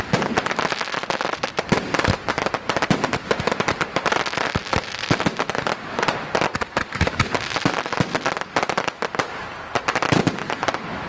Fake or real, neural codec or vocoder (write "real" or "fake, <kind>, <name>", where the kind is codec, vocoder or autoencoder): real